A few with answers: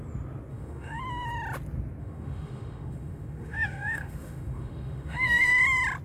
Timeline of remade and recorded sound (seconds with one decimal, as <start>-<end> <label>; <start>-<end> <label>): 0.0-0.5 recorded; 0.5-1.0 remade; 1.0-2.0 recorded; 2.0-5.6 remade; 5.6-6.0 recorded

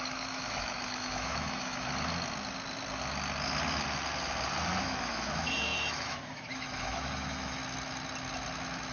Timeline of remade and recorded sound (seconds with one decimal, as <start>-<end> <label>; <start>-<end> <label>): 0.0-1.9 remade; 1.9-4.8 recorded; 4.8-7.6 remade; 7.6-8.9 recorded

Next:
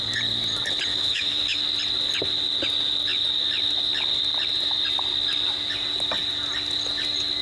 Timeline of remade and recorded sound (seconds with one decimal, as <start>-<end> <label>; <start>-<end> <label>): 0.0-0.9 recorded; 0.9-1.6 remade; 1.6-7.4 recorded